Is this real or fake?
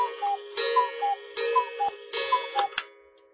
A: real